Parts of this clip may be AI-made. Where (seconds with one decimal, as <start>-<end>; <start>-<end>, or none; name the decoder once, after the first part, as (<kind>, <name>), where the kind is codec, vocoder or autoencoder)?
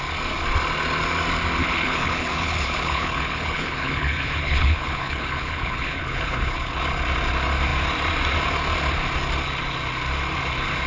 1.6-6.8 (codec, HILCodec)